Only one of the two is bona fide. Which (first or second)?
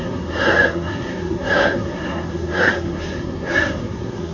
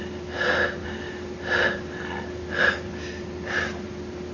second